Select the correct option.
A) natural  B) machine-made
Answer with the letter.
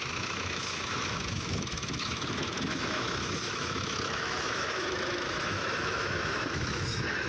B